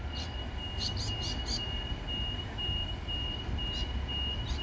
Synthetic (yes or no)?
no